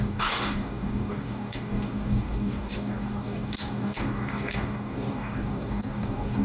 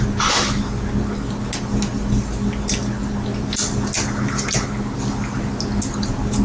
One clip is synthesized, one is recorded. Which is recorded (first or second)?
second